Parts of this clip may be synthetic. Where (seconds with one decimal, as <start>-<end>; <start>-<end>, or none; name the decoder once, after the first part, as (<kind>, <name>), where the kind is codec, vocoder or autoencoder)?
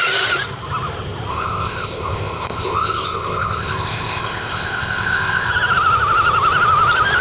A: 1.3-5.5 (codec, ZipCodec)